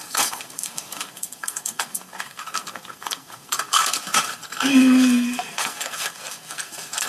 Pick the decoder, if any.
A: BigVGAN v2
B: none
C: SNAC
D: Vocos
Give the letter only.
C